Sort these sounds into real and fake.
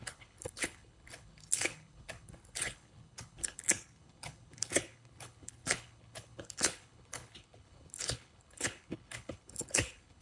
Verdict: fake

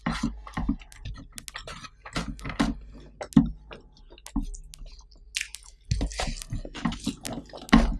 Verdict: real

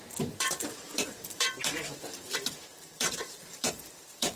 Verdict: fake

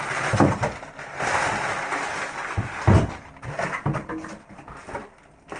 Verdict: real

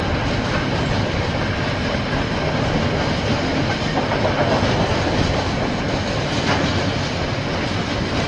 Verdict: real